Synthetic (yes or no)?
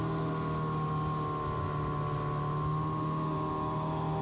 no